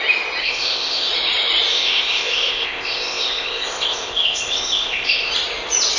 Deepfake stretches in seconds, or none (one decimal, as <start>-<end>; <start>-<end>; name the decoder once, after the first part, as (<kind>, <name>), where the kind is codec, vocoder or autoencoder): 0.4-1.1 (codec, ZipCodec); 1.7-5.3